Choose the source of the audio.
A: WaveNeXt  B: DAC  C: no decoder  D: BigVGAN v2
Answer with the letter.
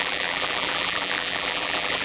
D